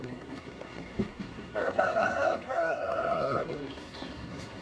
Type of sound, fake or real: fake